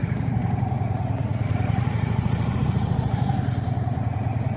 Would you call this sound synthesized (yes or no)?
yes